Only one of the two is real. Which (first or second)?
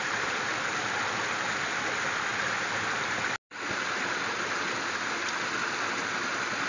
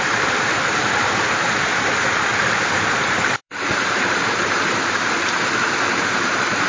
first